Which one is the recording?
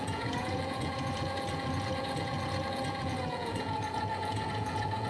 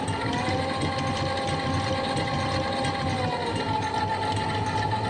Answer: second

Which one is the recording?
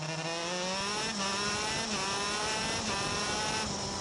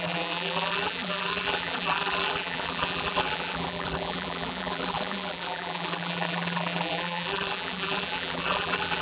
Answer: first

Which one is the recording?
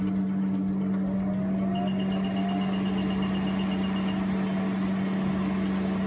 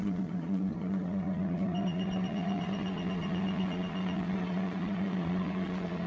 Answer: first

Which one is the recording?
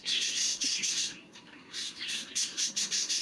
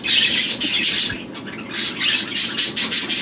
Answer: second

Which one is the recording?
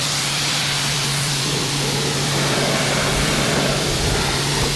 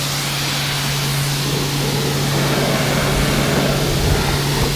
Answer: second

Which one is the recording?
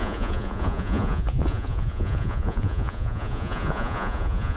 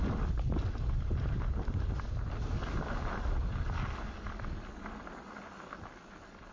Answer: second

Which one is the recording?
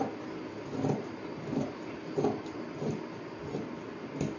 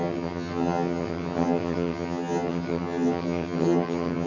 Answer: first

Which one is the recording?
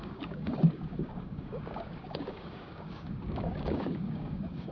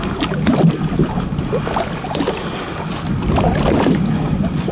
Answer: second